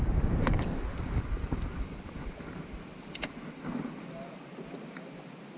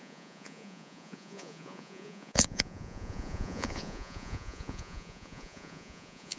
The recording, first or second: first